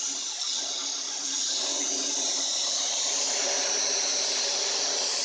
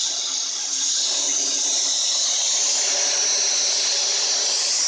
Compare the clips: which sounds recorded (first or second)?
second